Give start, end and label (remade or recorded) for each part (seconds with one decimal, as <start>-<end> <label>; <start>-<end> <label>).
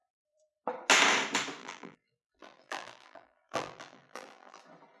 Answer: 0.0-1.6 recorded; 1.6-4.6 remade; 4.6-5.0 recorded